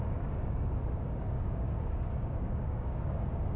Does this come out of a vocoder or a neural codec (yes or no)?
yes